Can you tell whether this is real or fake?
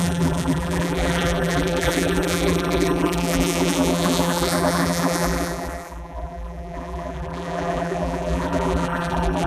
fake